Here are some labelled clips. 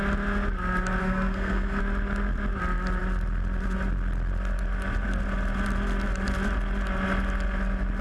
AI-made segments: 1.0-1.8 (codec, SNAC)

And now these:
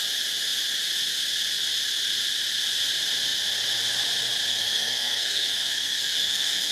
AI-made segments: 4.5-6.7 (codec, SNAC)